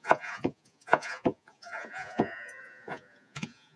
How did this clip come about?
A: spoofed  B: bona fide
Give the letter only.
A